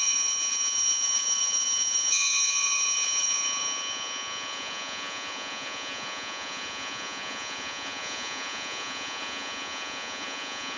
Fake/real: fake